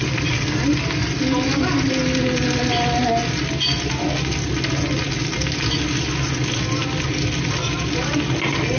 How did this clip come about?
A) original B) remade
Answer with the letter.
A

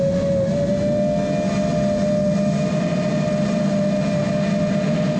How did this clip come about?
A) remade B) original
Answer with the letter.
B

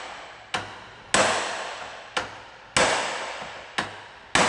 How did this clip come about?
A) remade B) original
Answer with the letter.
B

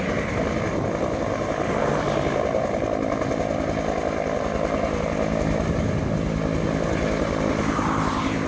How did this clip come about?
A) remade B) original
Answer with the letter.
B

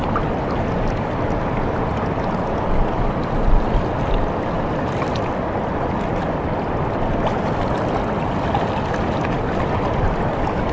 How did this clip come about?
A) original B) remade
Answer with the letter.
A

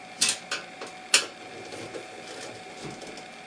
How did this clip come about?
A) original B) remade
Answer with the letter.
A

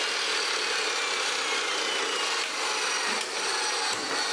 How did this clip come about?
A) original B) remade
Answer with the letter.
A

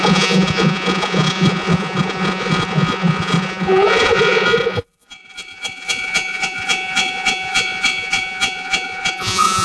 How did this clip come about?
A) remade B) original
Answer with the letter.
A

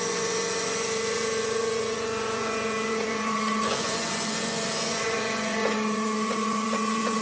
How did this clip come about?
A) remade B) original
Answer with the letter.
A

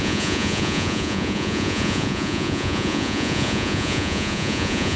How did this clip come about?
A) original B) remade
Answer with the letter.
B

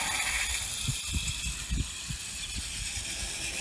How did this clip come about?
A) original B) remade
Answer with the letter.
A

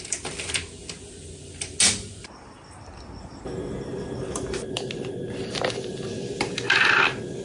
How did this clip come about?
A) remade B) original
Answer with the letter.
B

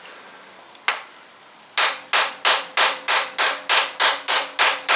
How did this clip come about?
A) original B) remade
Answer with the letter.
A